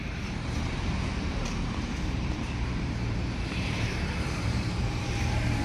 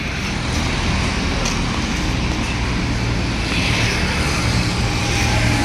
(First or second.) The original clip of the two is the second